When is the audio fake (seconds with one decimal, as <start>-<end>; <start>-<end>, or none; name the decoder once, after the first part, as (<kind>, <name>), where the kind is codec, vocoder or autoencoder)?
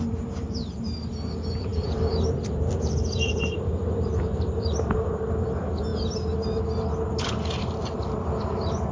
0.0-5.9 (vocoder, BigVGAN v2); 7.0-8.9